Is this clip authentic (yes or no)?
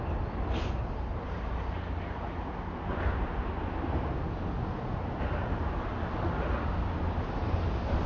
yes